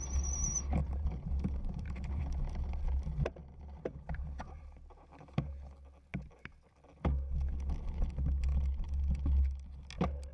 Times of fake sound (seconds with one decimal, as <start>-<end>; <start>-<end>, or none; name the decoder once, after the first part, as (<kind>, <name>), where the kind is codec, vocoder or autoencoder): 0.8-2.2 (vocoder, BigVGAN v2); 3.4-5.5